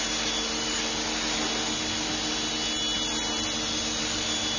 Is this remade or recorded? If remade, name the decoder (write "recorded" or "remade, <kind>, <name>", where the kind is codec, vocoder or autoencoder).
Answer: recorded